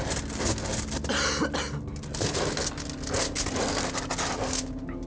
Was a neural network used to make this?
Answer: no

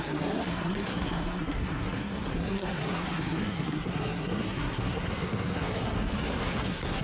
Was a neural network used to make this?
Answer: yes